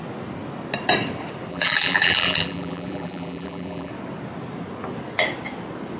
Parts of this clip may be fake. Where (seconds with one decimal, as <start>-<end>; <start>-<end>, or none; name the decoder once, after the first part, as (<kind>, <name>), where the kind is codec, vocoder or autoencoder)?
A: 1.5-3.9 (vocoder, BigVGAN v2)